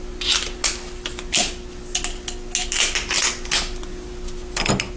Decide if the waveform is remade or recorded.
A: recorded